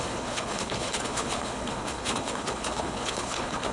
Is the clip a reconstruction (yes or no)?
yes